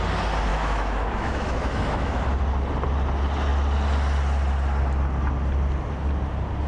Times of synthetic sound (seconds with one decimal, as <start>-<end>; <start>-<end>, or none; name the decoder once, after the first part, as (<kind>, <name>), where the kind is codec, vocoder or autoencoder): 0.5-2.2 (autoencoder, DAC-VAE)